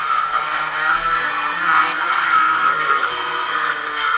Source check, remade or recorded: remade